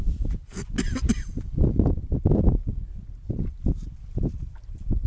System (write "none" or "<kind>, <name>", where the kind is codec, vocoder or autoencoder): none